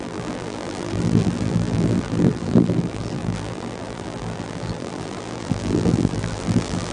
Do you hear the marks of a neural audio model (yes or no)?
yes